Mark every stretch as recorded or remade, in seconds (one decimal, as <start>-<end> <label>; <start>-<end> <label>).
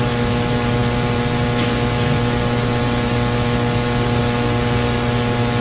0.0-5.6 recorded